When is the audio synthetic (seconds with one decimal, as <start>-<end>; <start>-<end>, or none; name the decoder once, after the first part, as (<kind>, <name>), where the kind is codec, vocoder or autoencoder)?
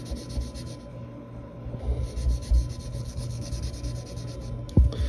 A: 0.9-1.8 (codec, HILCodec); 2.9-3.5